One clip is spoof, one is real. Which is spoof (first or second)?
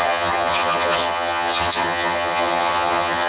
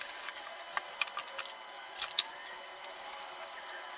first